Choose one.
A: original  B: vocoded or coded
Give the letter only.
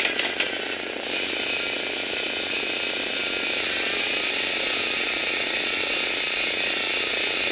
A